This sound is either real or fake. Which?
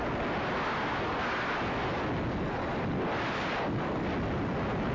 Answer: real